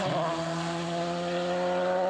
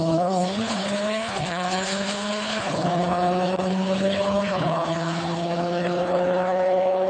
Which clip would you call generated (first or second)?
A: second